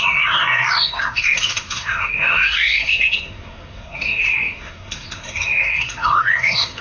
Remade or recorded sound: remade